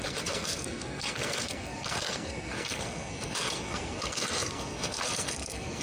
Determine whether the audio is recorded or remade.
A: remade